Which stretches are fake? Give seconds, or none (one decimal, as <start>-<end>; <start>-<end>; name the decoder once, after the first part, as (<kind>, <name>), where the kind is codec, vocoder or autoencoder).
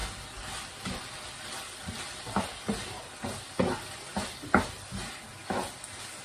0.0-3.5 (vocoder, BigVGAN v2)